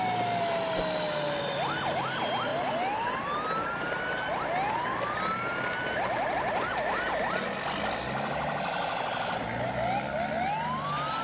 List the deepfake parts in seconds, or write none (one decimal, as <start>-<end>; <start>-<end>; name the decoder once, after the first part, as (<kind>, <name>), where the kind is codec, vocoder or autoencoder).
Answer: none

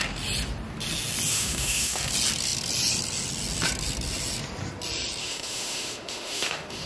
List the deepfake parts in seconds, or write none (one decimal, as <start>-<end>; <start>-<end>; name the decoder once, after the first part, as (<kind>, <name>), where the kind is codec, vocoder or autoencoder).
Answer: 1.3-2.1 (autoencoder, DAC-VAE); 5.2-6.9

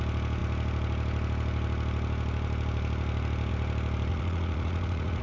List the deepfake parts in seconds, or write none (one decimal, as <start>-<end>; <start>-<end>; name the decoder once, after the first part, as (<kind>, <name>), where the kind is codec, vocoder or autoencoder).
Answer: 4.1-5.2 (vocoder, Vocos)

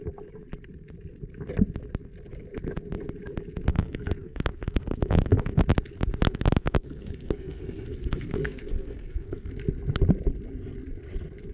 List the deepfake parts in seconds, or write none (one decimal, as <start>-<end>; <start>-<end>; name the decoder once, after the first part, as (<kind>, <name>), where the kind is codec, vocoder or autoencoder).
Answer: 3.7-5.6 (codec, SNAC); 6.3-9.5

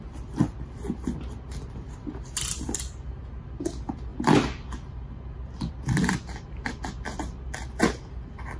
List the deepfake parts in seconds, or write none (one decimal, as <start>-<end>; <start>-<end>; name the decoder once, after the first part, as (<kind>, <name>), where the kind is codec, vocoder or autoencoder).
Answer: none

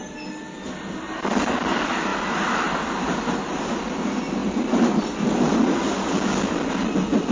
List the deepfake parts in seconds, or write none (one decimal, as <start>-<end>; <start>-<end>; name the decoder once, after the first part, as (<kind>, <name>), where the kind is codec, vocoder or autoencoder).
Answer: none

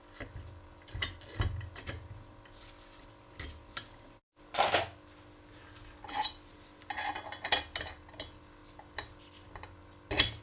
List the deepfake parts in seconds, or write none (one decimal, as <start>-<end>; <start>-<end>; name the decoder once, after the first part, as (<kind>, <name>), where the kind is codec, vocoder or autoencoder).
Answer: none

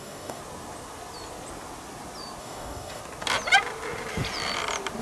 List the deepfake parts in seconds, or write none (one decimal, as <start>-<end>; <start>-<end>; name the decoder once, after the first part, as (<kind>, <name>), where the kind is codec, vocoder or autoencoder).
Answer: 0.0-0.4 (codec, DAC); 2.4-3.0